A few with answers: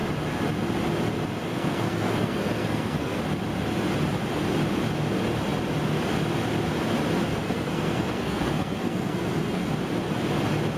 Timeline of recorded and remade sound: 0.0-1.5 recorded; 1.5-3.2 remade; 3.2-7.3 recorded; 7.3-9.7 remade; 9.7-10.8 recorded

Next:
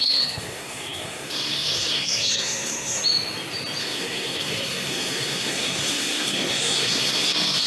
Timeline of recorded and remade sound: 0.0-3.0 remade; 3.0-3.8 recorded; 3.8-7.7 remade